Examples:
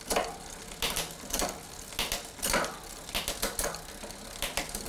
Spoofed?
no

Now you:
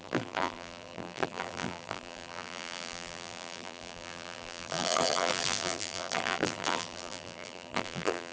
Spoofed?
yes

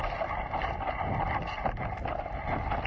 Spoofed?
no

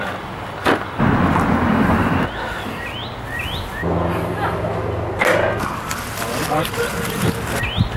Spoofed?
no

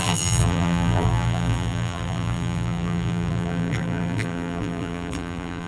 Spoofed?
yes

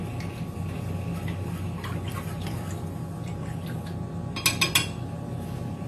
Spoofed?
no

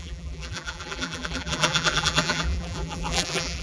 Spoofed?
yes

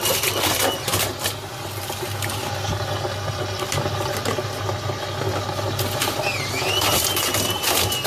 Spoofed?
no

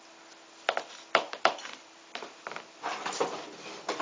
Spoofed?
yes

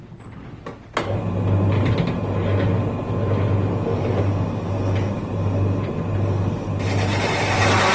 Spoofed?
no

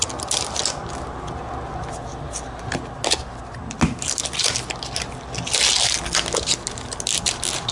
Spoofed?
no